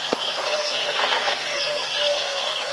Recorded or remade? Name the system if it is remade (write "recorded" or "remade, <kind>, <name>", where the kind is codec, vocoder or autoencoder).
remade, codec, SNAC